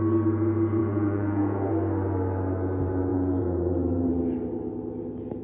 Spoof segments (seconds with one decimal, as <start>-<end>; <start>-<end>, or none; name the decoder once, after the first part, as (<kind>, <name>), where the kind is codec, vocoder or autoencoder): 0.8-1.7 (vocoder, Vocos); 3.1-4.1